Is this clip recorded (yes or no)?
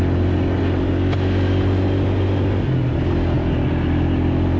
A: yes